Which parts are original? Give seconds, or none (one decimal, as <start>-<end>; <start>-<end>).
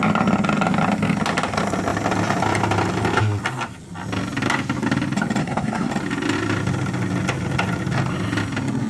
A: 0.0-5.4; 5.9-8.9